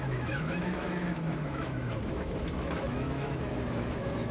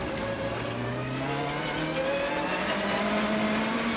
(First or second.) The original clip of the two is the second